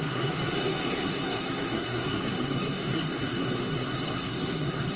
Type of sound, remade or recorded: remade